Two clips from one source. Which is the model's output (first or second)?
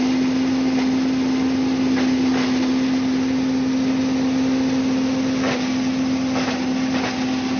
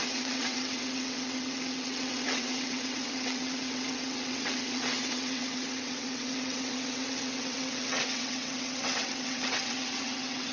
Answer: second